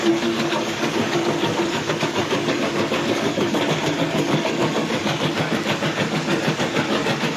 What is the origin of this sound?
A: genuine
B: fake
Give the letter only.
B